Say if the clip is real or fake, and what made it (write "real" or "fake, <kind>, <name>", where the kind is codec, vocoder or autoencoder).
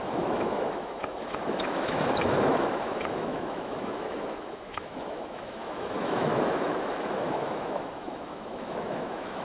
fake, autoencoder, DAC-VAE